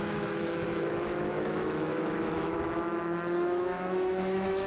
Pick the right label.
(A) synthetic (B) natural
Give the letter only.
A